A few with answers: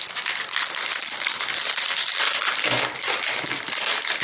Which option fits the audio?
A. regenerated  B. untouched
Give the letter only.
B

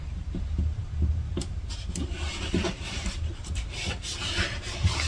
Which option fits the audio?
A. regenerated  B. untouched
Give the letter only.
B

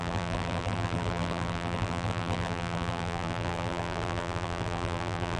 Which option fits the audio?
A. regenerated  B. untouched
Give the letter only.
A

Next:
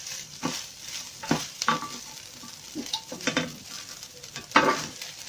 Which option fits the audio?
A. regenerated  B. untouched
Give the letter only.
A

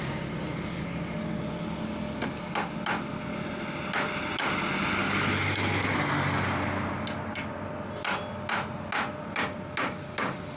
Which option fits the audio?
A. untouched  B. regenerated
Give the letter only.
A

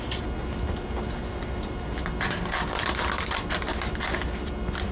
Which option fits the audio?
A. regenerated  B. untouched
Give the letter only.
B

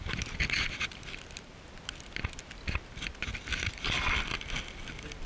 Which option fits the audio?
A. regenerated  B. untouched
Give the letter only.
B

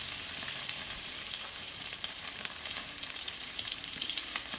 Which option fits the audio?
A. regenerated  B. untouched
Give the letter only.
A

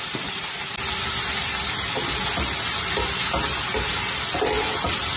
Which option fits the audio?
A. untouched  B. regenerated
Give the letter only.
A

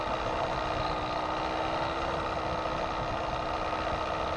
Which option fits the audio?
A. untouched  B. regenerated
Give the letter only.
A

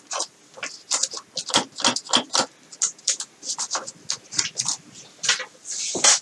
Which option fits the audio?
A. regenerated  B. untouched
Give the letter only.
B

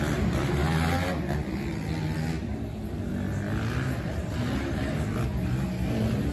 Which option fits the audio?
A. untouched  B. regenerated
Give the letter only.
A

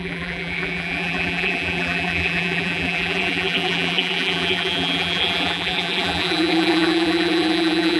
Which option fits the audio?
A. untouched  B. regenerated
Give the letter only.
B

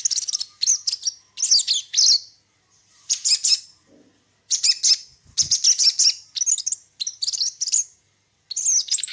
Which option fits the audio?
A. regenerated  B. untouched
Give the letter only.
B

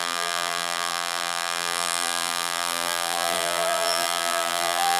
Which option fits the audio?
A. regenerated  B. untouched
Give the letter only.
A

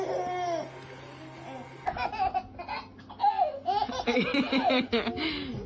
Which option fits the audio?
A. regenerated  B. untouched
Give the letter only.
B